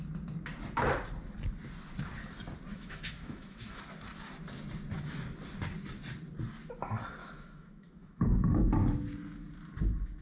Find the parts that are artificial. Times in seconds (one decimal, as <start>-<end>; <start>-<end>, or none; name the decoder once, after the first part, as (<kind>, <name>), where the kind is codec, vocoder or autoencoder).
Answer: 2.7-3.8 (autoencoder, DAC-VAE); 7.2-8.7